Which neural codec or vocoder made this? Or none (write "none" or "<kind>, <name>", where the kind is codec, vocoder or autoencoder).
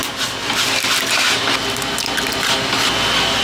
none